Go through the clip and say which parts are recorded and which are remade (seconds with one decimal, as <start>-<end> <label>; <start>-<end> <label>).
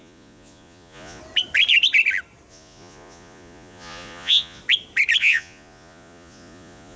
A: 0.0-1.2 remade; 1.2-2.5 recorded; 2.5-4.6 remade; 4.6-5.2 recorded; 5.2-7.0 remade